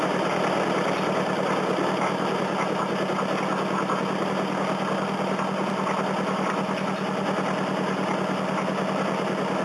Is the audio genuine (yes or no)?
yes